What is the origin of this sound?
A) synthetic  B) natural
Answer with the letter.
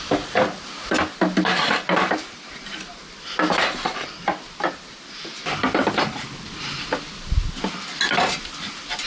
B